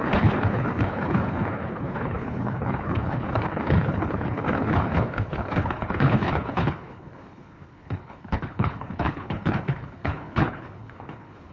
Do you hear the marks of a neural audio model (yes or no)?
yes